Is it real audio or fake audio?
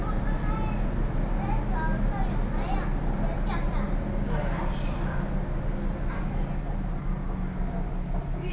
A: real